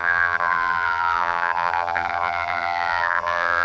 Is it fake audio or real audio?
fake